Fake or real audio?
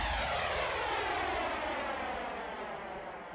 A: real